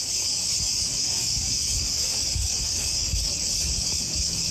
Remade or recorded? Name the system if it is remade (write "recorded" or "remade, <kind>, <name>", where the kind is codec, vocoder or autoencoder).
remade, codec, DAC